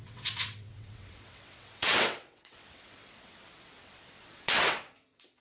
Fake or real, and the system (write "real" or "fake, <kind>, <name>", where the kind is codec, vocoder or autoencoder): fake, vocoder, WaveNeXt